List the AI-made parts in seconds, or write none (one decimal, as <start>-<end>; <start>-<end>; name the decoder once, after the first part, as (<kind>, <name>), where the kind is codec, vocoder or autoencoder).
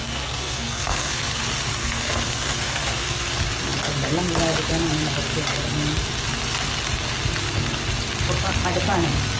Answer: 0.0-1.4 (codec, SNAC); 1.8-3.3